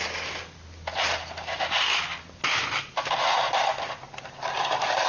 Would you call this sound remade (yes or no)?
no